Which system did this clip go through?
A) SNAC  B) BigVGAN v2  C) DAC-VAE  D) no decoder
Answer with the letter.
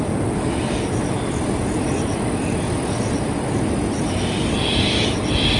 D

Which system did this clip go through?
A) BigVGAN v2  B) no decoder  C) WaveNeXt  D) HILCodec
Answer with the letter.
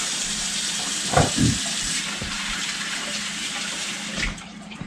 A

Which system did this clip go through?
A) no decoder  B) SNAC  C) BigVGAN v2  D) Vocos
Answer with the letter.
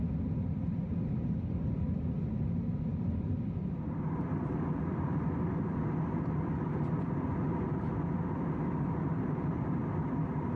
A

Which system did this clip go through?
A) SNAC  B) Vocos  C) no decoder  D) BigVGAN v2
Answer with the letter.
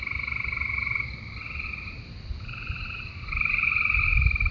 C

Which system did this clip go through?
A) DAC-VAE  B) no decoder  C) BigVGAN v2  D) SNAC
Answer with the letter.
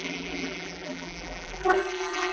C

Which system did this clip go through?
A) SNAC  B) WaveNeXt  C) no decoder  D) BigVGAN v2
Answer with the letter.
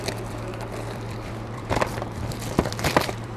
D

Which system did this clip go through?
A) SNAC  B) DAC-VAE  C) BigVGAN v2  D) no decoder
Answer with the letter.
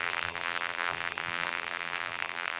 C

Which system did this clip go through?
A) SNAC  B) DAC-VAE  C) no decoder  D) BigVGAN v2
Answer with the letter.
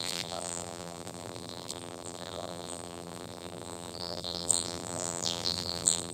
D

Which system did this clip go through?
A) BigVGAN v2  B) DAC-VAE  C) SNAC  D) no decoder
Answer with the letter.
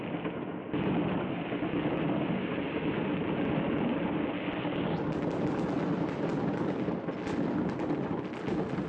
D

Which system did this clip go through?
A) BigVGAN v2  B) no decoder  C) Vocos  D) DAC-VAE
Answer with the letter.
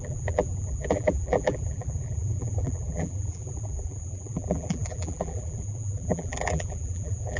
A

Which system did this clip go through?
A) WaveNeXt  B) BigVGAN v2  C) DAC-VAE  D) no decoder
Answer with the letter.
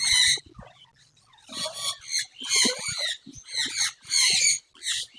D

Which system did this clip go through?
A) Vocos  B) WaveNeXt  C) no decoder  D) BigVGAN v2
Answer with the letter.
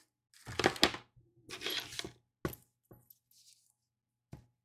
C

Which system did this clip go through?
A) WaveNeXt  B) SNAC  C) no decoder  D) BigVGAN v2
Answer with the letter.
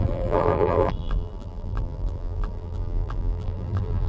D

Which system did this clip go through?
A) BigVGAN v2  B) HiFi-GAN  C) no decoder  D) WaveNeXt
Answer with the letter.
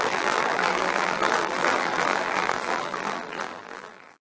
A